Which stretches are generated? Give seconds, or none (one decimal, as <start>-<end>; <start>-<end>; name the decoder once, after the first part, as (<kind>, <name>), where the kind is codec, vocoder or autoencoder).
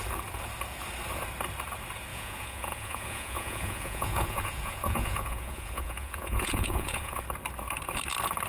2.1-7.2 (vocoder, Vocos)